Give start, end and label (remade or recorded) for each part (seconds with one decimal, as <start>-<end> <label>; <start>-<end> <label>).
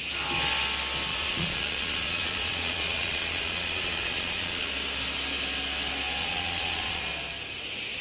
0.0-1.1 recorded; 1.1-4.7 remade; 4.7-6.2 recorded; 6.2-7.0 remade; 7.0-8.0 recorded